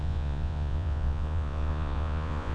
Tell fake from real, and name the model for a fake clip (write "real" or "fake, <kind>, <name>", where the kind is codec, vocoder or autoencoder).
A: fake, vocoder, Vocos